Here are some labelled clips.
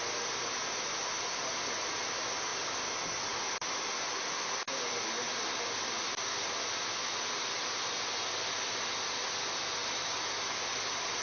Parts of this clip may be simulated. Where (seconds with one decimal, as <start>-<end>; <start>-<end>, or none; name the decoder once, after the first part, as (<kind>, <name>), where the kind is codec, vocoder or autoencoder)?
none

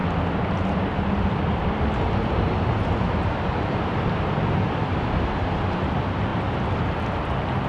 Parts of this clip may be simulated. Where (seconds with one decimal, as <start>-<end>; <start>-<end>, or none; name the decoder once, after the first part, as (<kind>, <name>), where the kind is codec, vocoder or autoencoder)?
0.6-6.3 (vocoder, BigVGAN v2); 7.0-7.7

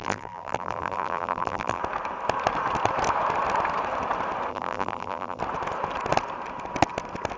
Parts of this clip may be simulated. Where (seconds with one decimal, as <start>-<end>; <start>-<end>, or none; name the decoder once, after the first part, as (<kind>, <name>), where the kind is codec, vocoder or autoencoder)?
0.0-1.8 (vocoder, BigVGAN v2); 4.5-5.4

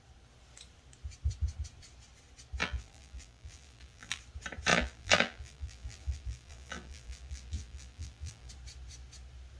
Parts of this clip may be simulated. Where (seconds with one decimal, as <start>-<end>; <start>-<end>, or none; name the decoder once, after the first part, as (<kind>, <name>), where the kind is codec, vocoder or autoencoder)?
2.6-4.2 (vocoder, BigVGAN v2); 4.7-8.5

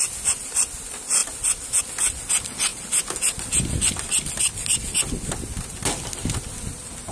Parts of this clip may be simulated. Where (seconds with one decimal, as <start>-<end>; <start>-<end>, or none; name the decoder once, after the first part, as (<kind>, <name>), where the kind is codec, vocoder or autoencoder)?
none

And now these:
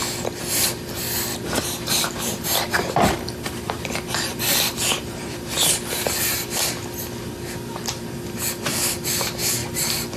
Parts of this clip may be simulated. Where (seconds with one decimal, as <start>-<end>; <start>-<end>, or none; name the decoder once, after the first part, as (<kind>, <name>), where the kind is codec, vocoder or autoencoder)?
1.3-6.0 (vocoder, BigVGAN v2)